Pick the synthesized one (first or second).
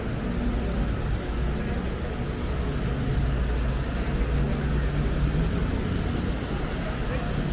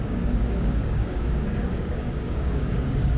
second